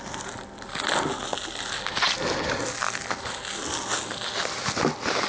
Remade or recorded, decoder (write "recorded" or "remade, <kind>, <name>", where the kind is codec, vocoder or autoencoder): recorded